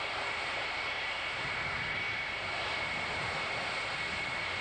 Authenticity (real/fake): real